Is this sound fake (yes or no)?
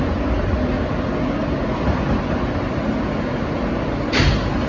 no